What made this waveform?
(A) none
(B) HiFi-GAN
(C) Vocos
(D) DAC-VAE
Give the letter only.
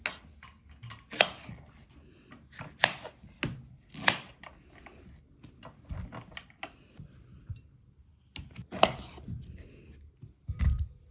A